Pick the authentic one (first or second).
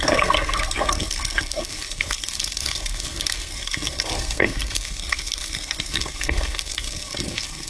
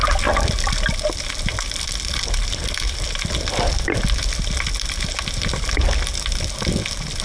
second